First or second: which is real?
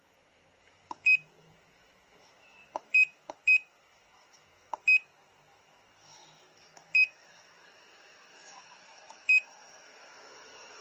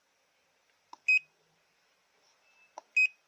second